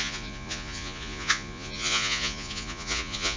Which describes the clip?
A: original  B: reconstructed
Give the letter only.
B